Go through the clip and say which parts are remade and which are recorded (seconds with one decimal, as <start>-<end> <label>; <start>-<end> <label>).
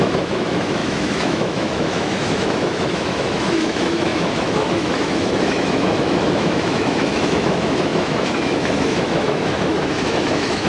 0.0-10.7 remade